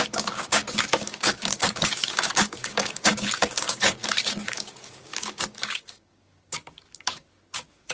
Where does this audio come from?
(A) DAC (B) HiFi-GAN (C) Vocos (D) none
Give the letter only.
A